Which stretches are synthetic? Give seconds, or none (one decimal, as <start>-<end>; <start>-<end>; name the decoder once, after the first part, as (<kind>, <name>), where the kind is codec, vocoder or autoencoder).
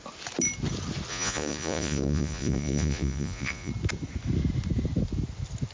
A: 1.1-3.7 (vocoder, Vocos)